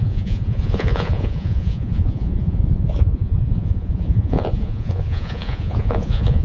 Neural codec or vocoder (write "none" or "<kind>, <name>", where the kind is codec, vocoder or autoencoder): vocoder, Vocos